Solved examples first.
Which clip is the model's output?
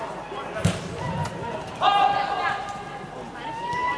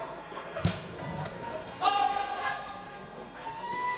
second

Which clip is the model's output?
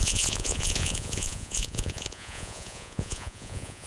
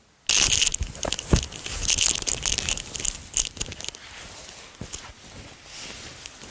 first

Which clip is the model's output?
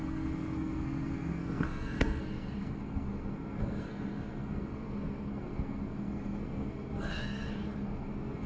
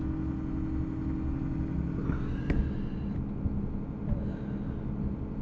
first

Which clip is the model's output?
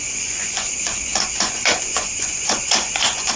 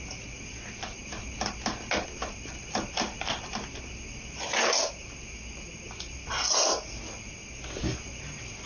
first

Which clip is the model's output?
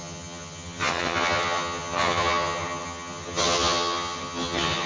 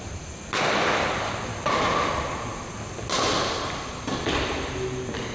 first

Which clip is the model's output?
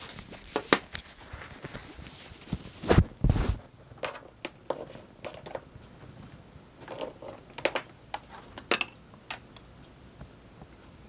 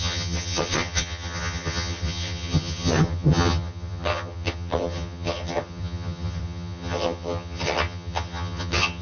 second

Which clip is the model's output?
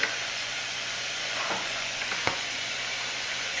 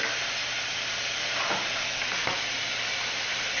first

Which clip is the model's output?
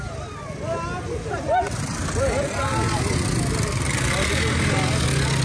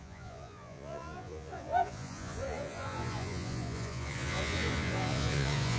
second